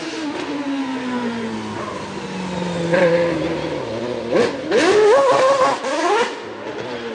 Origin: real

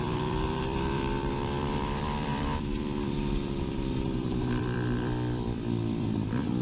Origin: fake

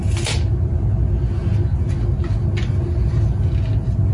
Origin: real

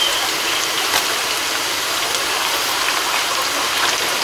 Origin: fake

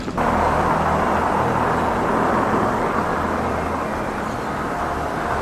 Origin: real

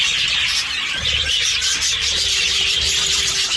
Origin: real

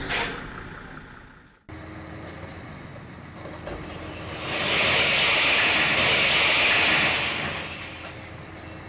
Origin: real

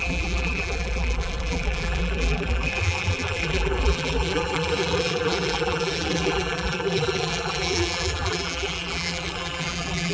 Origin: fake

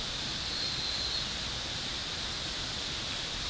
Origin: fake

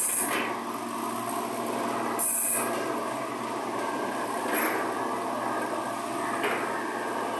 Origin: real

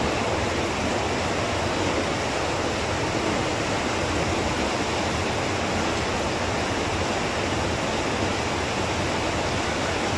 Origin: real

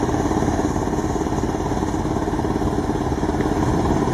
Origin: real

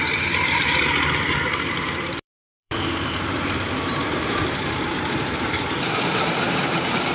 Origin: fake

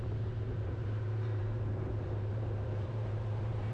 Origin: fake